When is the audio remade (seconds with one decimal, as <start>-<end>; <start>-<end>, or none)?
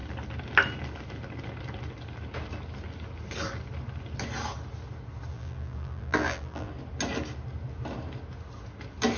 5.3-6.7